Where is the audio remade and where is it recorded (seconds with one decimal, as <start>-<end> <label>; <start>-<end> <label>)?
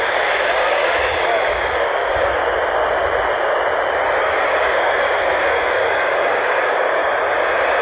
0.0-2.4 remade; 2.4-4.2 recorded; 4.2-7.0 remade; 7.0-7.8 recorded